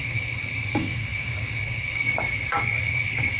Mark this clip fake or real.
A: fake